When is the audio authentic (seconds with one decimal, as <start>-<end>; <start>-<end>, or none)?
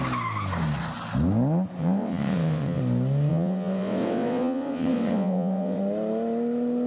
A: 0.0-1.8; 2.8-3.3; 5.8-6.9